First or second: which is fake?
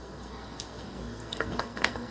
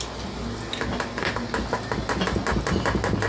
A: first